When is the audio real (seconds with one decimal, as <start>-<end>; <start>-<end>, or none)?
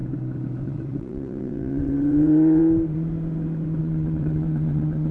0.0-0.6; 2.6-3.8